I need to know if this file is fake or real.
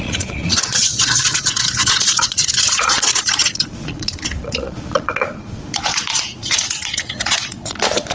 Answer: fake